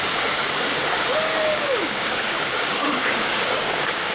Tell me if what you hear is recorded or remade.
remade